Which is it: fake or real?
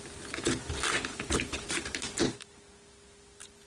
real